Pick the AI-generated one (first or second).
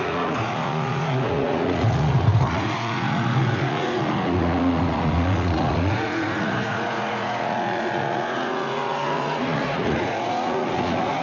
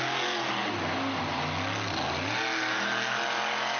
first